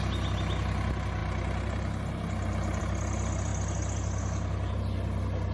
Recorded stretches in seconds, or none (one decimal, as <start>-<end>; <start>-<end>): 0.0-5.5